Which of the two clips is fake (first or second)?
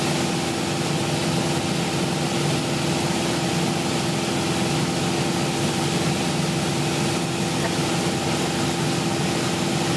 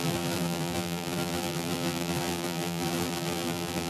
second